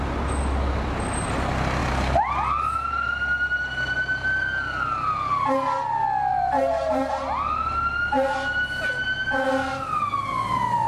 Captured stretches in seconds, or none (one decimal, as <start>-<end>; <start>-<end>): 0.0-1.8; 2.3-6.3; 7.1-10.9